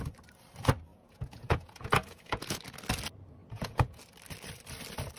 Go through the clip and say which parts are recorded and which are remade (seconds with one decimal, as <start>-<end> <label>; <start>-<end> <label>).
0.0-0.9 recorded; 0.9-2.6 remade; 2.6-3.4 recorded; 3.4-4.0 remade; 4.0-5.2 recorded